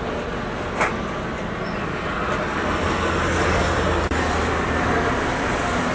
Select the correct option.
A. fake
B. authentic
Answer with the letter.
B